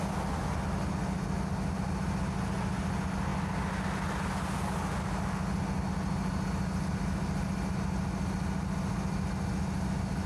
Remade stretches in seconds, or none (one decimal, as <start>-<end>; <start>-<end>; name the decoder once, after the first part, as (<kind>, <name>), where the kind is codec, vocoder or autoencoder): none